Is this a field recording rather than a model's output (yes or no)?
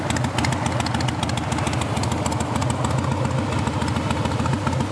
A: yes